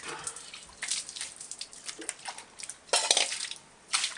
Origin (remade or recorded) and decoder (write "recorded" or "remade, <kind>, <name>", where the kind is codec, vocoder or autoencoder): recorded